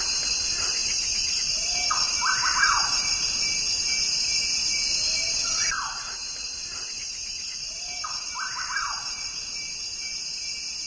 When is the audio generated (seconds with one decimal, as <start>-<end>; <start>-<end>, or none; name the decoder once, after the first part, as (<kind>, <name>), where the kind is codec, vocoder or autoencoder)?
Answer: none